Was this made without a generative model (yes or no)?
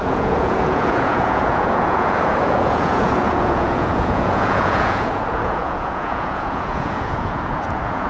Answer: no